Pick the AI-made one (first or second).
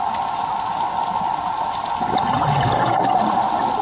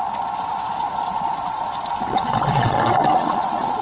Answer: second